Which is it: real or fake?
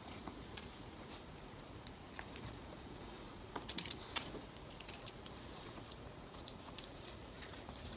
fake